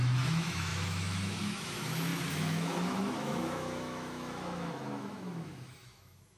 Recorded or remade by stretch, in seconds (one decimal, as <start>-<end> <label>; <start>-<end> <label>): 0.0-6.4 remade